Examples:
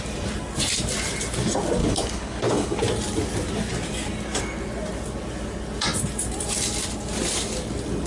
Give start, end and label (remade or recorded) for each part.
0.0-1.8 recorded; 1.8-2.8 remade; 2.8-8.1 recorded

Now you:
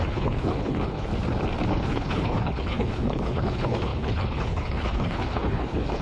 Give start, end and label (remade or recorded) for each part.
0.0-1.1 remade; 1.1-1.7 recorded; 1.7-6.0 remade

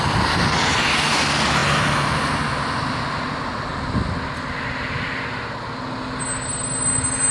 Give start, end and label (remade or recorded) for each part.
0.0-7.3 recorded

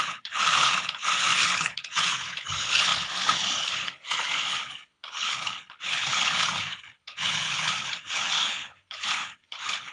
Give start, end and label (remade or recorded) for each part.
0.0-9.9 remade

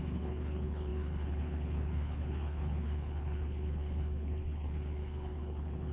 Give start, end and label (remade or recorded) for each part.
0.0-5.9 remade